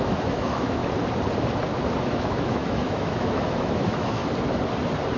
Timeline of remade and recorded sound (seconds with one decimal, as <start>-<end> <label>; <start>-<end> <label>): 0.0-0.8 remade; 0.8-2.0 recorded; 2.0-4.2 remade; 4.2-5.2 recorded